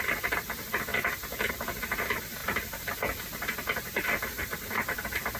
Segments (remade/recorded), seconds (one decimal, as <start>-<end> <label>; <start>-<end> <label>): 0.0-0.9 remade; 0.9-1.5 recorded; 1.5-5.4 remade